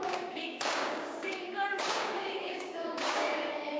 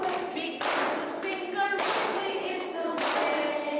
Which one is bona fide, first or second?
second